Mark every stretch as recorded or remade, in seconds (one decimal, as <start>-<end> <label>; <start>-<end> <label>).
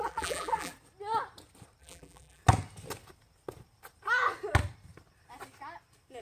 0.0-0.7 remade; 0.7-1.8 recorded; 1.8-2.4 remade; 2.4-6.2 recorded